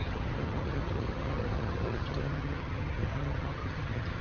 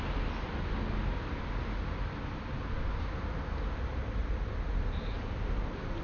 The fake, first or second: first